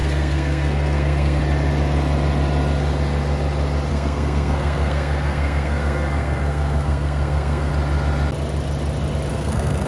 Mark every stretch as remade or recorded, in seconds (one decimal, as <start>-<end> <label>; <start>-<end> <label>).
0.0-1.4 remade; 1.4-3.9 recorded; 3.9-7.7 remade; 7.7-9.3 recorded; 9.3-9.9 remade